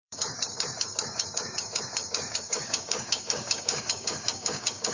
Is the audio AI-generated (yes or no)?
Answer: yes